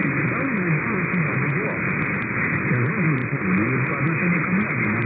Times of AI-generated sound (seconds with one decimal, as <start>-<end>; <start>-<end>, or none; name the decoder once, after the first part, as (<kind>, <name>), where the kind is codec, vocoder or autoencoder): none